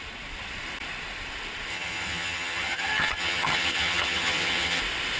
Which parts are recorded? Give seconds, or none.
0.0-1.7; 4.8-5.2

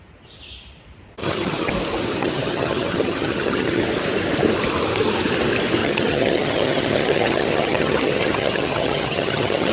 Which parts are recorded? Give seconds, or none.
0.0-1.2; 1.7-2.2; 3.8-5.8

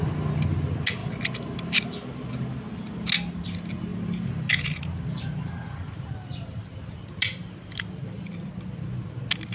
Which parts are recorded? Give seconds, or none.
0.0-9.5

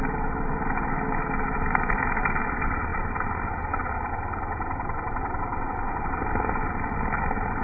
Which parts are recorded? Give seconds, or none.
0.0-7.6

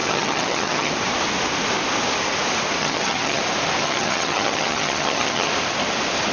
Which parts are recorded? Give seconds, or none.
0.9-2.8; 3.4-3.8; 5.5-6.3

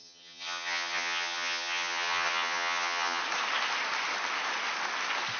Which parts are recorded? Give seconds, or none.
3.2-5.4

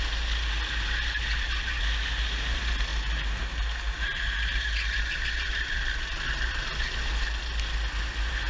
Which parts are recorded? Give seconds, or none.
0.0-8.5

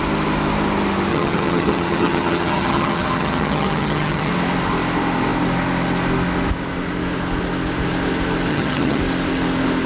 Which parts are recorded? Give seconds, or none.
0.0-1.1; 4.3-8.5; 9.0-9.9